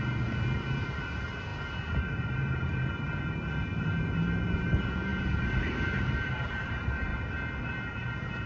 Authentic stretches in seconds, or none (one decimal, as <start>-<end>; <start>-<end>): 7.1-7.7